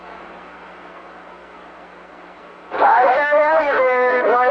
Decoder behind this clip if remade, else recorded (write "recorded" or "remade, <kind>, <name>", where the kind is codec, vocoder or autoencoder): remade, codec, SNAC